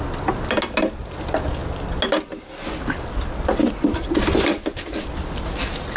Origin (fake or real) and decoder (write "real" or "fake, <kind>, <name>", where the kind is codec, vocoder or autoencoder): real